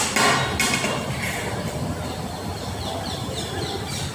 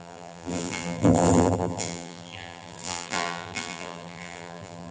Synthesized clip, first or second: second